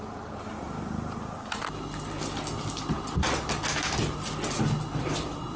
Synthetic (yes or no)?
no